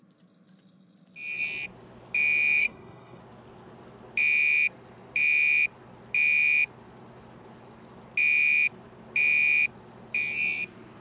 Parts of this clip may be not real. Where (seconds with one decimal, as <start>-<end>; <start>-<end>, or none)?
2.6-3.2